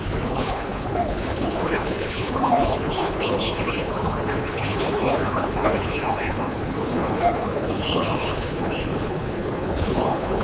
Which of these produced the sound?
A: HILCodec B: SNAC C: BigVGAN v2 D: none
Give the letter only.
A